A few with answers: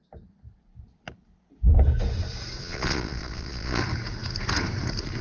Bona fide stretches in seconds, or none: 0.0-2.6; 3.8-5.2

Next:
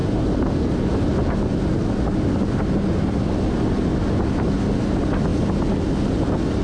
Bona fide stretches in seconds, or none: 0.0-6.6

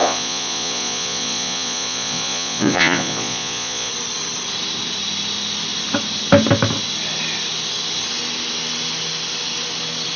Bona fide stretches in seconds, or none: 3.9-10.2

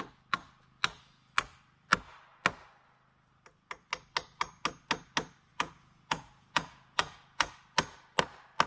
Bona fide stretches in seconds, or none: 0.0-5.5; 7.5-8.7

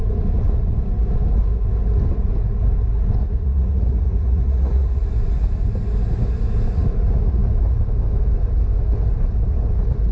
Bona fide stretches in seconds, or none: 0.0-3.2; 5.1-10.1

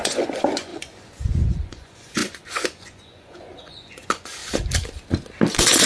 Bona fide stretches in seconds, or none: 4.4-5.5